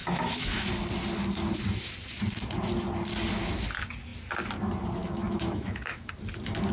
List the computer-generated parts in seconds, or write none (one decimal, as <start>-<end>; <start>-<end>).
0.0-0.7; 5.0-6.1